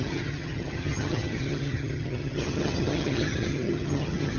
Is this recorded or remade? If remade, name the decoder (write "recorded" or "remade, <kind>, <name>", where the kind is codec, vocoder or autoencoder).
remade, vocoder, HiFi-GAN